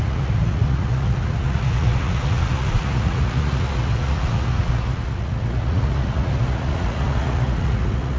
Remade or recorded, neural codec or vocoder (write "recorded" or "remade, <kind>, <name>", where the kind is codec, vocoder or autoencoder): remade, vocoder, Vocos